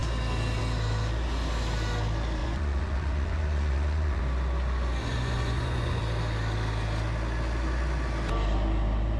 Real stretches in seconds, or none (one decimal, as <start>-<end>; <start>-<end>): 0.0-2.4; 4.2-5.0; 6.0-9.2